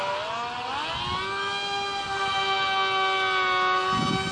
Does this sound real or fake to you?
real